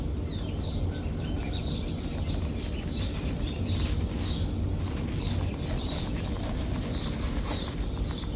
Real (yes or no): yes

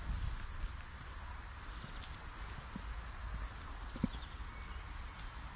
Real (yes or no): yes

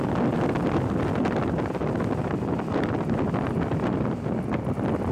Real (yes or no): yes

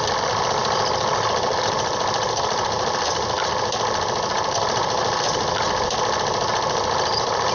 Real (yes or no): yes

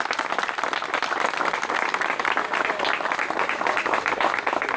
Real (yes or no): yes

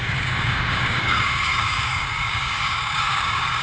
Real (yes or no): no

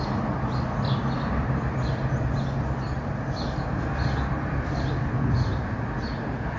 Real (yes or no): yes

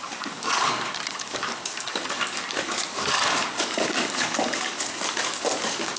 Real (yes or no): no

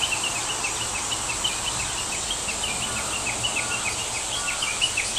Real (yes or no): yes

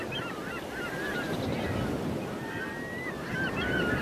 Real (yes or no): yes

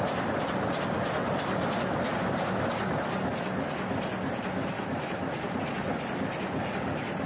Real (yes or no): yes